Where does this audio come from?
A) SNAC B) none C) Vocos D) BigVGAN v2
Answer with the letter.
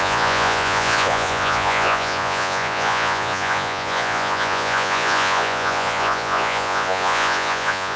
C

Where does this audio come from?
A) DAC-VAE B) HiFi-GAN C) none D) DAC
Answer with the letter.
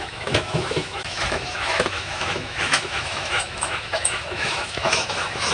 A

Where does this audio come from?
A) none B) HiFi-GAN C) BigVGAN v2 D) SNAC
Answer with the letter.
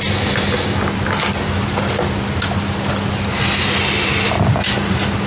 A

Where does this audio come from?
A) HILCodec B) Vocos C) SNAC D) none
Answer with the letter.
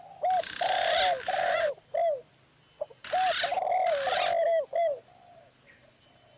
D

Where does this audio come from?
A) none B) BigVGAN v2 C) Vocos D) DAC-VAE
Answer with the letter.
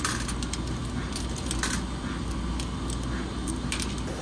A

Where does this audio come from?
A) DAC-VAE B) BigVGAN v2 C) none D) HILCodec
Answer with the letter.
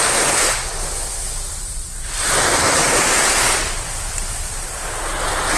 C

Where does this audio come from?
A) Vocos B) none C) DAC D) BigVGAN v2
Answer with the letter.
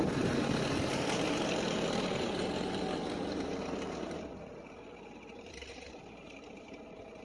D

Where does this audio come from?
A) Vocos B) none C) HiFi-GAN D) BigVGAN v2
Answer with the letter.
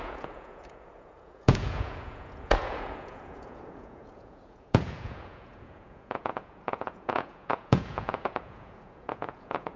A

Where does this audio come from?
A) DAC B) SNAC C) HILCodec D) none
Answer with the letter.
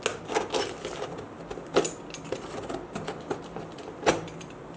D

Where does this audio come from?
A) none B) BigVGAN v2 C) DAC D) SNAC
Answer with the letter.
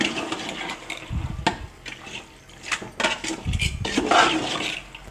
A